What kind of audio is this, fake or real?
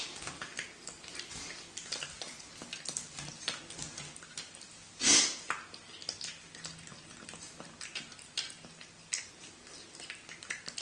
real